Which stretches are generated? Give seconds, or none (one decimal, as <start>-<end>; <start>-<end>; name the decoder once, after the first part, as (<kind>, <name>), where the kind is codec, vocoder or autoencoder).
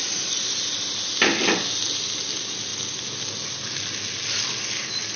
none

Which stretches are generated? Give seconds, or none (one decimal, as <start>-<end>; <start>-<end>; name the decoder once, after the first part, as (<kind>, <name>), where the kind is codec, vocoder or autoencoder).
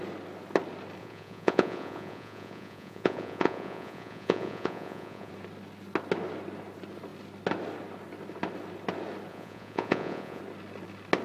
1.0-5.3 (vocoder, Vocos); 9.3-10.4